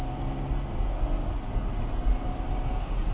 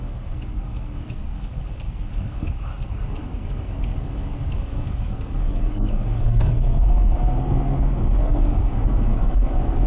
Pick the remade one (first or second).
second